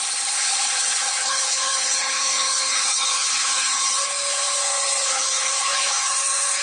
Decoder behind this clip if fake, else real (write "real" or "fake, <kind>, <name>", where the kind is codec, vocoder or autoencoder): fake, codec, HILCodec